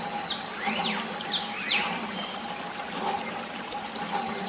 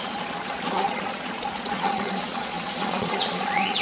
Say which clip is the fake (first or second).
second